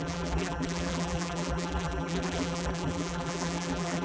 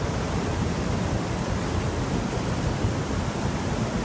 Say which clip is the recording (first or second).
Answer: second